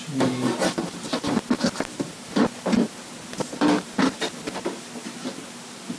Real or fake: real